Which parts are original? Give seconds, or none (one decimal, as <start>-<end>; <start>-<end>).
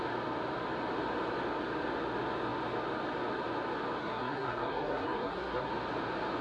0.0-4.0; 5.7-6.4